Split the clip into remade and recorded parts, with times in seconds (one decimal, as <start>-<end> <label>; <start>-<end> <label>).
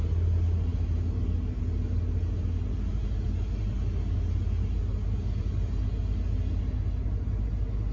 0.0-7.9 recorded